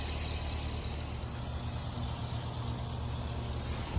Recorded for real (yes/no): yes